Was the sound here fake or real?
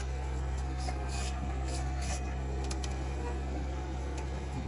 fake